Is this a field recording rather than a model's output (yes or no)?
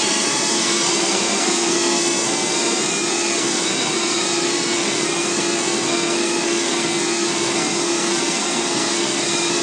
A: no